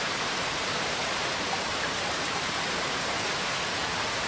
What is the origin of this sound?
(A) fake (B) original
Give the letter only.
A